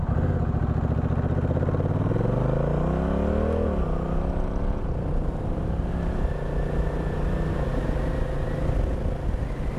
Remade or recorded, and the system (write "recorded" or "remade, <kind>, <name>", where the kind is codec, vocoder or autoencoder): recorded